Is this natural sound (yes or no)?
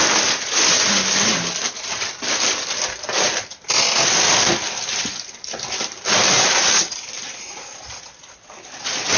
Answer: yes